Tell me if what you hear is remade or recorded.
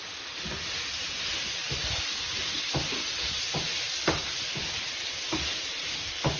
remade